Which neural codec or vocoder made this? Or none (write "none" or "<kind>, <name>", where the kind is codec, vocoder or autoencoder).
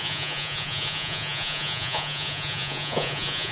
vocoder, Vocos